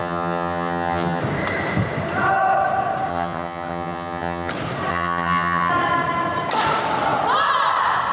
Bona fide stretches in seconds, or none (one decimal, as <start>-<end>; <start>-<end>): 1.2-3.1; 4.5-4.9; 5.7-8.1